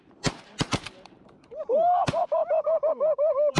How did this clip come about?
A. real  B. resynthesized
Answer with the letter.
B